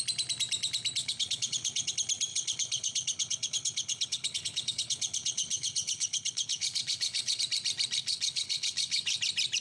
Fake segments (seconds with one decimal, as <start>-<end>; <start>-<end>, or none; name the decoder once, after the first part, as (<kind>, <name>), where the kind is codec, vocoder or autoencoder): 1.0-1.9 (codec, HILCodec); 2.3-7.4; 8.0-9.2